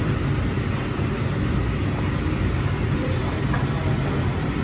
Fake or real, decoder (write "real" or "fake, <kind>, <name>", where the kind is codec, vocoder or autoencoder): real